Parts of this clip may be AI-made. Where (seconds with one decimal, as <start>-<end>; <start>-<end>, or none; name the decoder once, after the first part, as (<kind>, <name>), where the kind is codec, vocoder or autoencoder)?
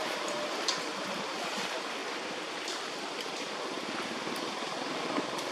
2.0-5.5 (vocoder, BigVGAN v2)